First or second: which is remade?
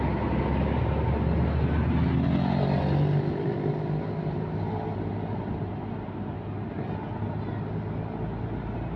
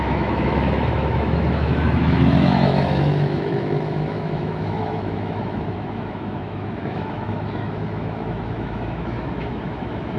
second